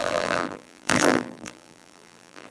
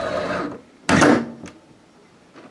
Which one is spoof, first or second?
first